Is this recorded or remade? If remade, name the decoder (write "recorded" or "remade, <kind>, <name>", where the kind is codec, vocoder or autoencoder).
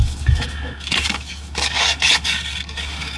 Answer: remade, codec, DAC